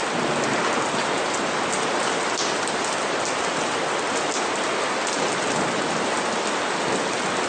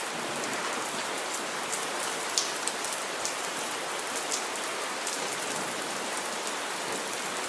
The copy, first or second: second